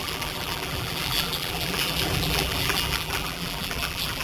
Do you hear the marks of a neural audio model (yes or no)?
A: yes